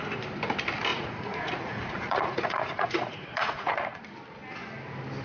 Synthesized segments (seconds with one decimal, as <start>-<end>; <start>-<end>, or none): 0.9-4.0